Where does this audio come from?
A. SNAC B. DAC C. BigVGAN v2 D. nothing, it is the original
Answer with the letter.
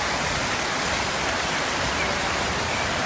D